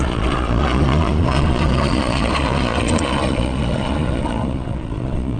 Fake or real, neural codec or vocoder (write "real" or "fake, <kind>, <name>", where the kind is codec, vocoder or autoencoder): fake, vocoder, Vocos